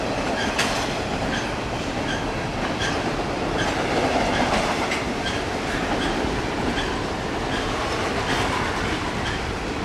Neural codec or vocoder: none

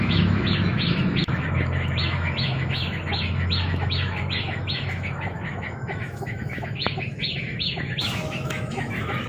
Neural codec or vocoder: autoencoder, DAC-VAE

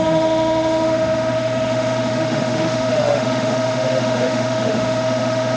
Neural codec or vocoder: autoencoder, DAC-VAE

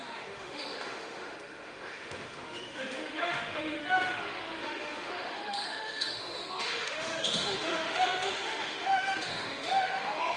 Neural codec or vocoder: autoencoder, DAC-VAE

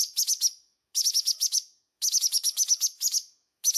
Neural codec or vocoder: autoencoder, DAC-VAE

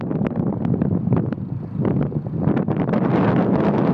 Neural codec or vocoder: none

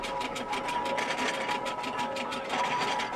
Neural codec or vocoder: none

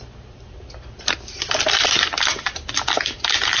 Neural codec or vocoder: none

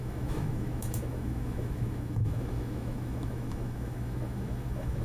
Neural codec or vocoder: autoencoder, DAC-VAE